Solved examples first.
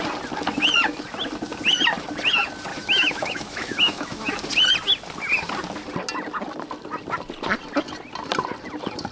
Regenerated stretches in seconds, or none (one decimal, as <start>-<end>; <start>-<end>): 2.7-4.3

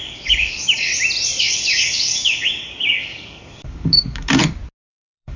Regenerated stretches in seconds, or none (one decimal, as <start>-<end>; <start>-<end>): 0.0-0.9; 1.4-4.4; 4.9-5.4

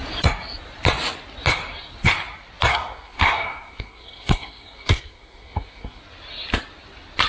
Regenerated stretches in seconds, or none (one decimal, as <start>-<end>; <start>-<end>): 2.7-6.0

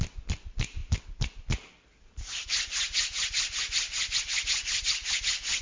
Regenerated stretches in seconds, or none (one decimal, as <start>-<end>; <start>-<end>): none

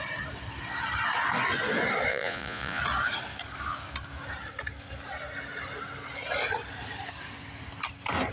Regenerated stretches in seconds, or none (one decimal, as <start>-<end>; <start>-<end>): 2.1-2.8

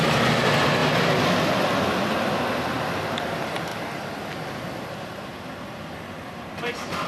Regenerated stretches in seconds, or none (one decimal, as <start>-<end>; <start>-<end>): none

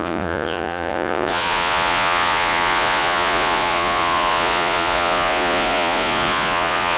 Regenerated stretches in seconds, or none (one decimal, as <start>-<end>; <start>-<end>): 0.0-7.0

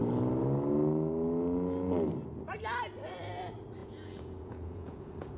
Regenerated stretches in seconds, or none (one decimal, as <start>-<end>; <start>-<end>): 3.8-5.4